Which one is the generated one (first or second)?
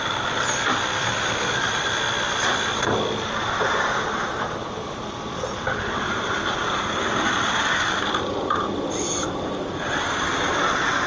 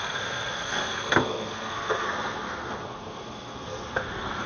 second